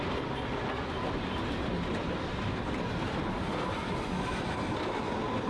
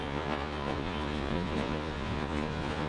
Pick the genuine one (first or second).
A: first